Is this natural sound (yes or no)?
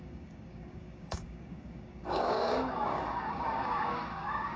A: no